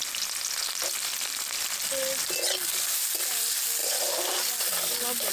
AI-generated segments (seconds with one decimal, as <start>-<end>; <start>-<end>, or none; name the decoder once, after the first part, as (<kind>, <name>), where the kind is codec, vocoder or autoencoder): none